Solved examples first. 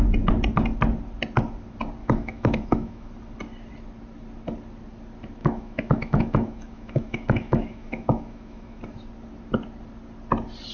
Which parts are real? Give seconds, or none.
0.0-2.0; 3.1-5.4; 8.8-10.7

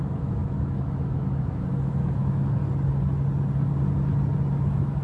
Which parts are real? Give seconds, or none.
2.6-4.6

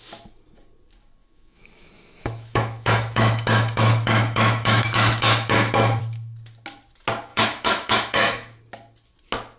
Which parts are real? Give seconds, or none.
0.0-1.2; 6.0-7.3; 8.6-9.6

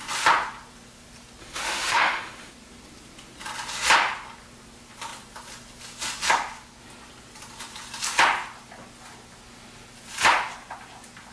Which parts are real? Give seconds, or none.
0.0-1.4; 2.5-11.3

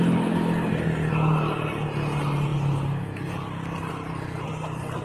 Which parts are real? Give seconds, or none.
0.0-5.0

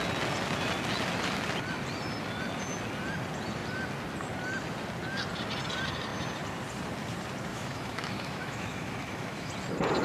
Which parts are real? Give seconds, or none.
0.0-7.5; 9.5-10.0

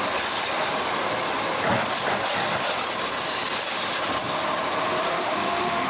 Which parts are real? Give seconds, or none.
0.0-5.1